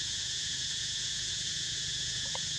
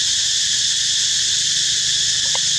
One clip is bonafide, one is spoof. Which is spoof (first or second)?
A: first